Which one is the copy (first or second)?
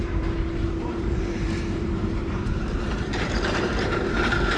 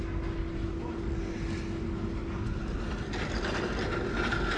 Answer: first